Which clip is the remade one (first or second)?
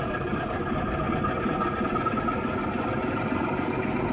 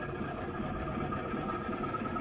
first